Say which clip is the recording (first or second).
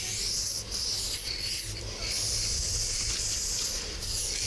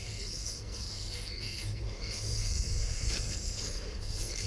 first